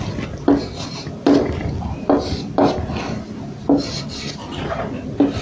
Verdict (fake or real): real